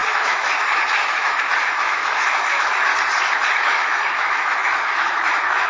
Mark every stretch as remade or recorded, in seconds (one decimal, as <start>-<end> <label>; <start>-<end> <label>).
0.0-2.9 remade; 2.9-3.5 recorded; 3.5-5.7 remade